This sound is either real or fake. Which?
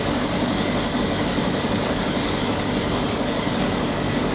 fake